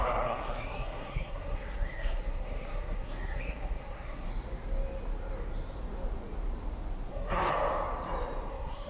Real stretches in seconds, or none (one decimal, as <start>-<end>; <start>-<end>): 4.3-7.1; 7.5-8.5